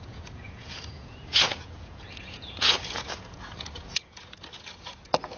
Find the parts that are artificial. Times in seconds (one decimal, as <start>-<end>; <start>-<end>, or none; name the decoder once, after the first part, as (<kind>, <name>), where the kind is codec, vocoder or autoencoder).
0.0-5.4 (vocoder, Vocos)

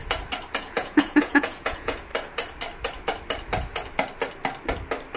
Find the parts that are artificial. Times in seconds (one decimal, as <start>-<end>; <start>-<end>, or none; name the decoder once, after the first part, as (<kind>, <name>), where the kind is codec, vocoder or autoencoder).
0.6-2.1 (vocoder, Vocos)

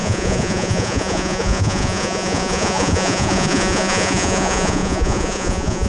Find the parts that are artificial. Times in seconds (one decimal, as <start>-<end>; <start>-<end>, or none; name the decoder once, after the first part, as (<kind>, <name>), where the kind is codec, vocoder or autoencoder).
0.0-5.9 (vocoder, Vocos)

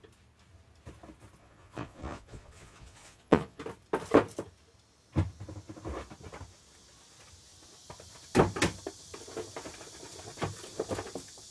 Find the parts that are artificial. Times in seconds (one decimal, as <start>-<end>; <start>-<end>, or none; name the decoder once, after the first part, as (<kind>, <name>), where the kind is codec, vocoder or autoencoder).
1.4-3.6 (vocoder, Vocos)

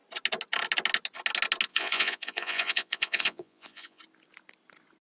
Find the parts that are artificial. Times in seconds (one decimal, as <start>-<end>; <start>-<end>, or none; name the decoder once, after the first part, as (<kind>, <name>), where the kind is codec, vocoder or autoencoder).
1.7-4.0 (vocoder, Vocos)

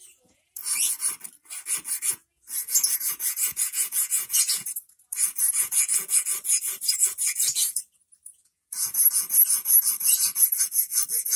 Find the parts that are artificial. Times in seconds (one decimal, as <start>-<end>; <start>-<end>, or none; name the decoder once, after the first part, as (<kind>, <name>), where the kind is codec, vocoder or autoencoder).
0.0-0.6 (vocoder, Vocos); 2.1-11.4